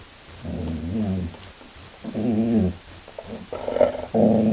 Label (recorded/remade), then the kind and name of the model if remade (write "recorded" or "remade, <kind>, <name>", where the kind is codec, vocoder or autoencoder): recorded